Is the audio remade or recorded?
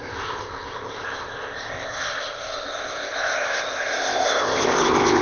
remade